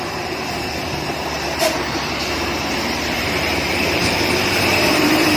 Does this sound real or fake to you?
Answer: fake